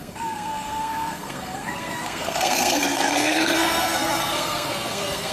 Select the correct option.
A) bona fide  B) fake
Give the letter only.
B